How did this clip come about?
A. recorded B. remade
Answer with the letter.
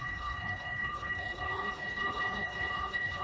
B